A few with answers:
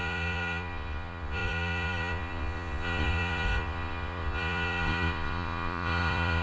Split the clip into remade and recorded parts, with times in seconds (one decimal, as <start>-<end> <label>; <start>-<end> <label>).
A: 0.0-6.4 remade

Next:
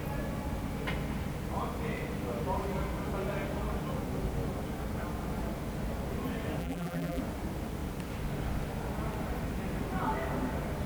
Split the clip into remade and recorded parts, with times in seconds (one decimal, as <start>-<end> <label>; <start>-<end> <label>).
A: 0.0-6.6 recorded; 6.6-7.2 remade; 7.2-10.9 recorded

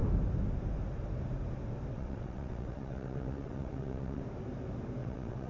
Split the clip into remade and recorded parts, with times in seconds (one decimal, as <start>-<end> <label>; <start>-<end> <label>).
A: 0.0-1.9 recorded; 1.9-4.2 remade; 4.2-5.0 recorded; 5.0-5.5 remade

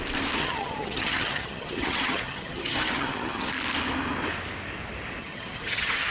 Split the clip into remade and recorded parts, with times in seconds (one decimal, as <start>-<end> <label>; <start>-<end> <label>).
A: 0.0-0.4 recorded; 0.4-3.5 remade; 3.5-5.2 recorded; 5.2-6.1 remade

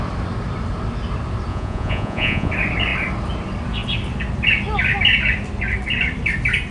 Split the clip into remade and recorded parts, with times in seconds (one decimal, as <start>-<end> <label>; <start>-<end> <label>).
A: 0.0-1.5 recorded; 1.5-2.5 remade; 2.5-6.7 recorded

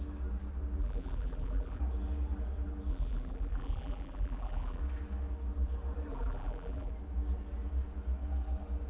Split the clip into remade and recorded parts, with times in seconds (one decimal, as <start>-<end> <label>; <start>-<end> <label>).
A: 0.0-0.8 recorded; 0.8-1.8 remade; 1.8-2.9 recorded; 2.9-4.8 remade; 4.8-6.1 recorded; 6.1-6.9 remade; 6.9-8.9 recorded